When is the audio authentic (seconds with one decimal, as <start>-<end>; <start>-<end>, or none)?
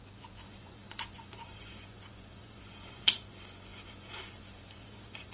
none